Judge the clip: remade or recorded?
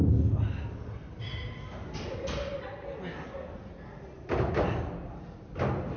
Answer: recorded